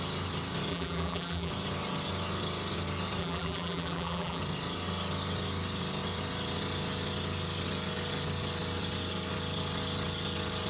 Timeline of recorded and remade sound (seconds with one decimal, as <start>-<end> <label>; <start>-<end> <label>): 0.0-0.7 recorded; 0.7-1.5 remade; 1.5-3.2 recorded; 3.2-4.4 remade; 4.4-10.7 recorded